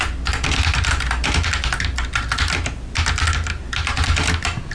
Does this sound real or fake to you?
real